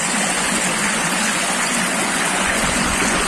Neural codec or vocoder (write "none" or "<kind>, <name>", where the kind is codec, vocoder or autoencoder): vocoder, Vocos